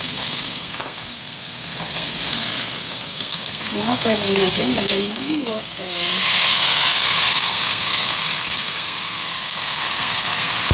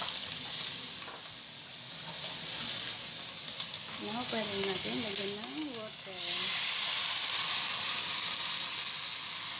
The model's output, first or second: first